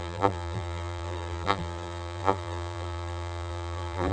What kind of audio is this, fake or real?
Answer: fake